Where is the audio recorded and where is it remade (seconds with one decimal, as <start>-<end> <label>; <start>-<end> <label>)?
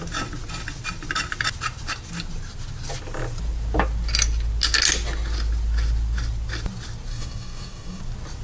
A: 0.0-7.1 recorded; 7.1-8.0 remade; 8.0-8.4 recorded